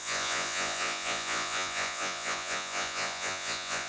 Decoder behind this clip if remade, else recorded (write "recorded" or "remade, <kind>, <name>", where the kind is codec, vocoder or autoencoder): remade, vocoder, Vocos